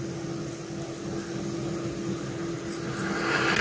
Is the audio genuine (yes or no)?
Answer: yes